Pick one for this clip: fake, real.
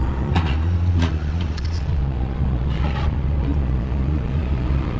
fake